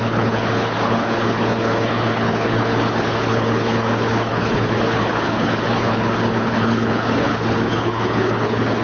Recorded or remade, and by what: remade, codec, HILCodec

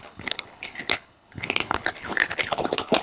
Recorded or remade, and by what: remade, codec, HILCodec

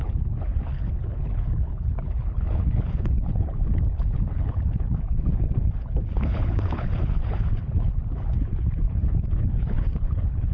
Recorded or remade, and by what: remade, codec, HILCodec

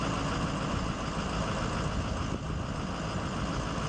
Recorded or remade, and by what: recorded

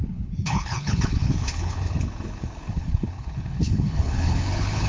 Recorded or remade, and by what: remade, codec, HILCodec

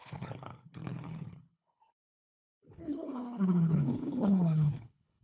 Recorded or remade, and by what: remade, codec, HILCodec